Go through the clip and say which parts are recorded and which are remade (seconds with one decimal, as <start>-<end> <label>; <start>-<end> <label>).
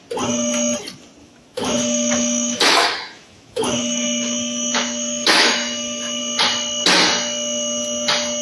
0.0-1.2 recorded; 1.2-6.2 remade; 6.2-8.4 recorded